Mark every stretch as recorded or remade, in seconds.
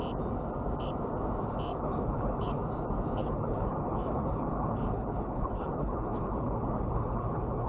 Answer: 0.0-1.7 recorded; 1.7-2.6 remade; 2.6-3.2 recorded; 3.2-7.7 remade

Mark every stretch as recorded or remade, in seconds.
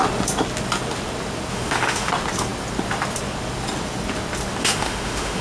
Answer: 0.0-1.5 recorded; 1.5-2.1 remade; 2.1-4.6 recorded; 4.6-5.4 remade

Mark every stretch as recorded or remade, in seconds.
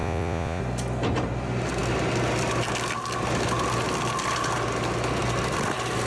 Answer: 0.0-0.6 remade; 0.6-6.1 recorded